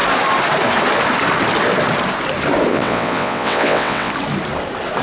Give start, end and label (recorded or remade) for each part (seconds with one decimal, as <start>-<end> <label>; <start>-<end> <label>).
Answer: 0.0-2.7 recorded; 2.7-4.1 remade; 4.1-5.0 recorded